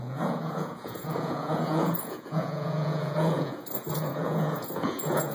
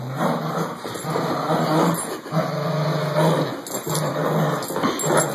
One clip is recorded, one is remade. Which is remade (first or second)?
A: first